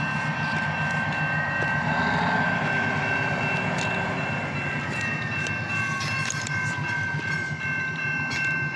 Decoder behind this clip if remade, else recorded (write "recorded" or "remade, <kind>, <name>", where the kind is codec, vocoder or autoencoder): recorded